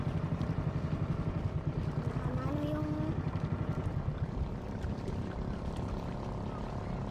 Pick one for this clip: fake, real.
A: real